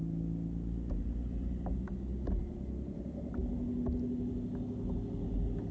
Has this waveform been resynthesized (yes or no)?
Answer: no